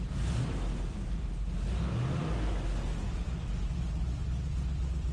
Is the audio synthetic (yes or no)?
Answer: no